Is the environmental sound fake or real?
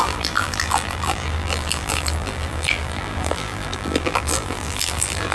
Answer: fake